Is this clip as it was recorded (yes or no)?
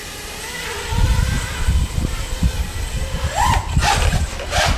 yes